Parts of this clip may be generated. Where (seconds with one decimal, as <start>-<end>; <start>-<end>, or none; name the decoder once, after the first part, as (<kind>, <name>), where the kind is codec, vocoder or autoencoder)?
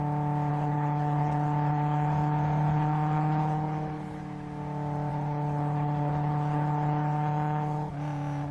0.5-4.2 (codec, HILCodec); 5.1-7.9